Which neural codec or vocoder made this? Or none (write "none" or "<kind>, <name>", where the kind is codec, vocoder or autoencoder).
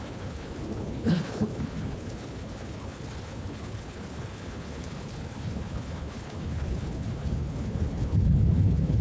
codec, HILCodec